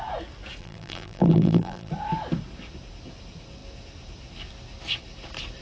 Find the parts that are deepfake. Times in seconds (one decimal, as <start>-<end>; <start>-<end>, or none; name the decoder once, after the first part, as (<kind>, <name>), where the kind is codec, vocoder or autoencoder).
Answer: 0.6-1.9 (vocoder, BigVGAN v2)

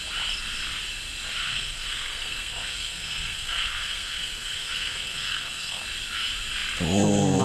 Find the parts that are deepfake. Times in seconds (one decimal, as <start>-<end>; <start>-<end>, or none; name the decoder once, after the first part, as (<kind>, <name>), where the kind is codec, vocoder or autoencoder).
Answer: 1.4-5.8 (codec, SNAC)

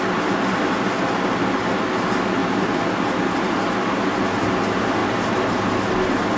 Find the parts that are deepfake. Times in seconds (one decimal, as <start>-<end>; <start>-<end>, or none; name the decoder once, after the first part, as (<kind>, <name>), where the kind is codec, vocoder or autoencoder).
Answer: 2.4-2.9 (vocoder, BigVGAN v2); 5.0-5.9

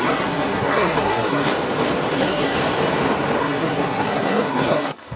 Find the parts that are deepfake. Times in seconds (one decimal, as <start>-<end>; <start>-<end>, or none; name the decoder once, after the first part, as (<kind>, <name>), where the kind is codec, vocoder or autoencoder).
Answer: 0.0-1.5 (codec, SNAC); 2.1-2.6; 3.4-5.2

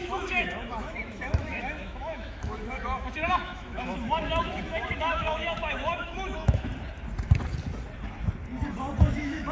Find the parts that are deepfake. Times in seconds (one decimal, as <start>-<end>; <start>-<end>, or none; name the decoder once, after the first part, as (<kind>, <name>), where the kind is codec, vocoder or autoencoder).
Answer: 0.0-6.7 (autoencoder, DAC-VAE); 9.0-9.5

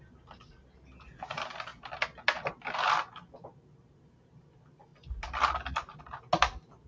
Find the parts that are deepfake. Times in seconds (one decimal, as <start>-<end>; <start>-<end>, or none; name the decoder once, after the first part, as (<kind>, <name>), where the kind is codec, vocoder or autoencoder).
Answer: none

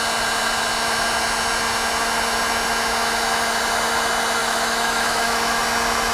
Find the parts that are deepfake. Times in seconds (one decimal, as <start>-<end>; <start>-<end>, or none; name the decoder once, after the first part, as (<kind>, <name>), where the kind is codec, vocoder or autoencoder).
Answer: 4.4-5.6 (autoencoder, DAC-VAE)

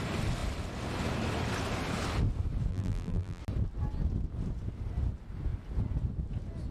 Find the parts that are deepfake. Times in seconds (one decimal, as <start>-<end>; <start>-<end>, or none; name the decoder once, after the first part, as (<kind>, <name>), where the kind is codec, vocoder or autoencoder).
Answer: 2.7-3.4 (vocoder, BigVGAN v2)